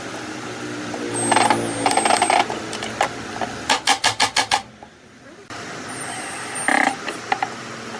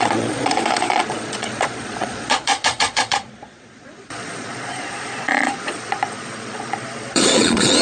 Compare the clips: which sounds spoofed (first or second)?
second